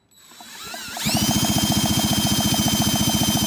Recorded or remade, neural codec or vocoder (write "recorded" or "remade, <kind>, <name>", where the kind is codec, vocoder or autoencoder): recorded